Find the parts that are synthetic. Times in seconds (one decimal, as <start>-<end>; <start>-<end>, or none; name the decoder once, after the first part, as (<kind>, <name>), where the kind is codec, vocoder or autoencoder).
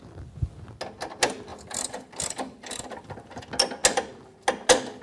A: 1.5-3.4 (vocoder, BigVGAN v2)